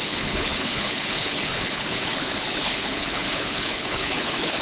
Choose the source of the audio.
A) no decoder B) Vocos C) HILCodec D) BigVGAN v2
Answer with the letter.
C